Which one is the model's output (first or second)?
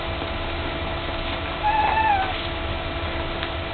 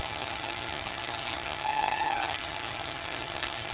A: second